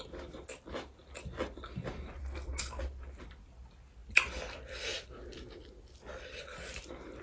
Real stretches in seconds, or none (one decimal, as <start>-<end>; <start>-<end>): 0.0-2.2; 2.8-7.2